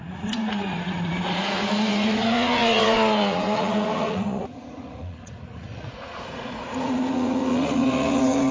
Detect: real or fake fake